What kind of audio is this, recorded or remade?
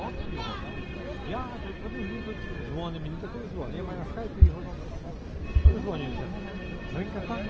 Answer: recorded